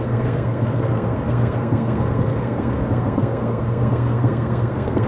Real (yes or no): no